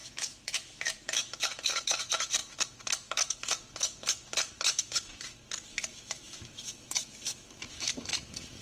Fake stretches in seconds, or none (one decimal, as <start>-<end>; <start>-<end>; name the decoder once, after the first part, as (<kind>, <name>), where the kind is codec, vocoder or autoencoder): 0.0-8.6 (autoencoder, DAC-VAE)